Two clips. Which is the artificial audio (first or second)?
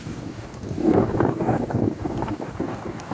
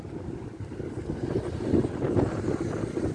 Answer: first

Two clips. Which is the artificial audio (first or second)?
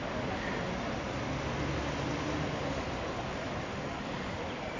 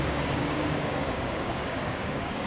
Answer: second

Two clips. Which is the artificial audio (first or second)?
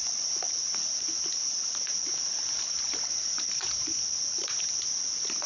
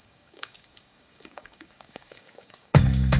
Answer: second